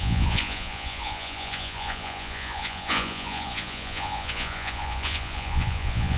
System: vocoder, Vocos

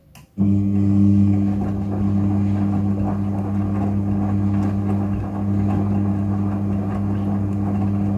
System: none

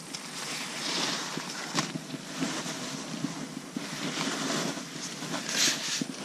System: none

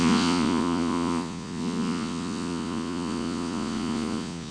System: vocoder, Vocos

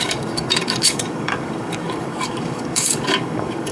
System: codec, DAC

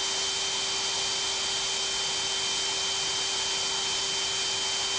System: none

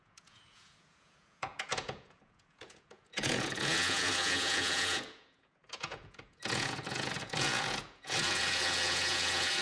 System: vocoder, Vocos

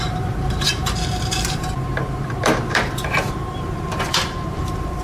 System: vocoder, BigVGAN v2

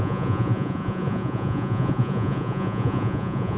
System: vocoder, Vocos